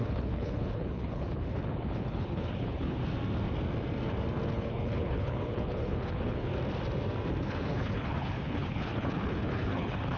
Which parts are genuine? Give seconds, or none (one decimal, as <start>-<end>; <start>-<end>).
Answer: 3.0-4.5; 6.5-7.4

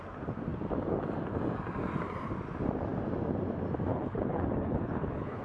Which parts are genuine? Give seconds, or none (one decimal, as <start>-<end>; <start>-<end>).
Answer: 0.0-3.9

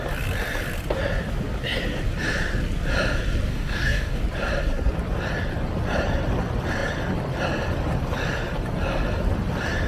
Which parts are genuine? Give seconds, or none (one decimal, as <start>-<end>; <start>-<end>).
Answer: 0.0-3.5; 4.2-9.9

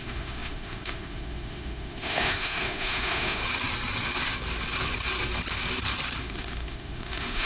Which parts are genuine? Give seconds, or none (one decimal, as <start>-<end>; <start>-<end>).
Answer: 3.4-6.2